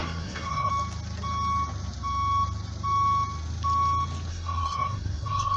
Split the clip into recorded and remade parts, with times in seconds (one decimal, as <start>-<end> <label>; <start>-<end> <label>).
0.0-0.7 remade; 0.7-4.3 recorded; 4.3-5.6 remade